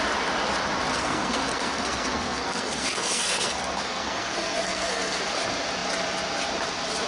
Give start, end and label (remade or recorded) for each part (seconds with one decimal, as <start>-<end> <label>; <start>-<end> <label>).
0.0-0.9 recorded; 0.9-5.2 remade; 5.2-7.1 recorded